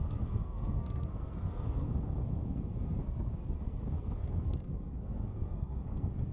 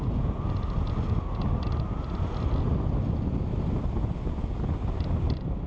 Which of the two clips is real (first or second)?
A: second